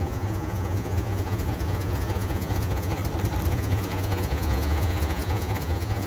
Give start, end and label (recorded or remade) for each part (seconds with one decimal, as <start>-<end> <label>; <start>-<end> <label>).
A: 0.0-3.0 remade; 3.0-3.5 recorded; 3.5-6.1 remade